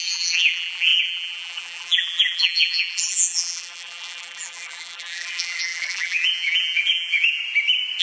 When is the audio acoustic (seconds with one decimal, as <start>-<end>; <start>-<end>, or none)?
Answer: 7.4-8.0